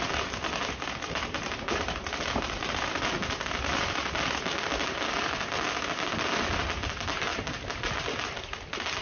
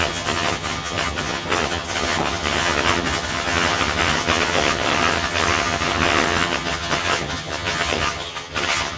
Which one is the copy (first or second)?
second